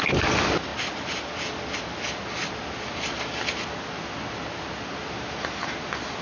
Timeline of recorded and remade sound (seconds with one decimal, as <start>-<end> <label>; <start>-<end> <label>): 0.0-6.2 recorded